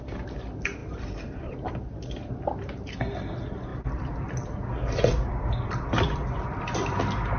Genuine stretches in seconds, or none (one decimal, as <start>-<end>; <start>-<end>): 0.0-0.8; 2.3-7.4